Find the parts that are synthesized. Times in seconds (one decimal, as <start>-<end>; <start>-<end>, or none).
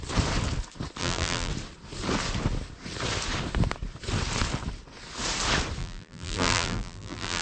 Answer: 1.0-1.5; 5.8-7.4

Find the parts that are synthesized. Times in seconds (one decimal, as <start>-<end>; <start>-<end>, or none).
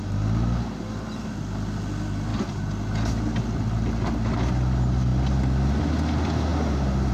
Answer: none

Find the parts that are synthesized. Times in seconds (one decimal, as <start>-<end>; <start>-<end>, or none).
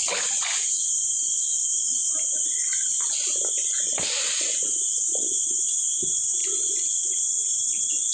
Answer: none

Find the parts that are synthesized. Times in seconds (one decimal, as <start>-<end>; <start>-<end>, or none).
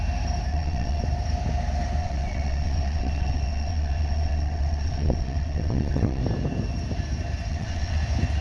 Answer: 0.5-1.0; 2.0-6.2; 7.5-8.0